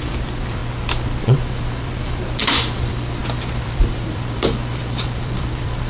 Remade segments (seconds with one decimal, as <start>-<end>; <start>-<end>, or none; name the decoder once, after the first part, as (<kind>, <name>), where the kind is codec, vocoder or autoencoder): 0.0-0.6 (vocoder, BigVGAN v2); 1.2-5.9